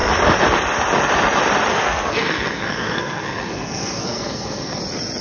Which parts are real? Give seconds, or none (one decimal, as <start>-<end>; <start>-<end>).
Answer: 0.0-1.7; 4.8-5.2